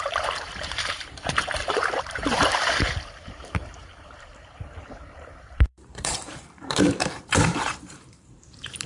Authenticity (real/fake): fake